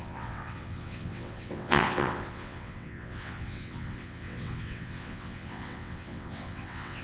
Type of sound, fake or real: fake